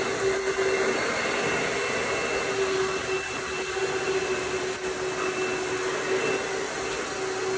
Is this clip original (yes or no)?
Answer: yes